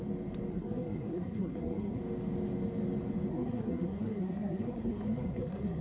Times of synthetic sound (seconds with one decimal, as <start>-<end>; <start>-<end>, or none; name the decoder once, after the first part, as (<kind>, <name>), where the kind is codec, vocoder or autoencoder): 0.5-2.0 (codec, SNAC); 3.3-5.8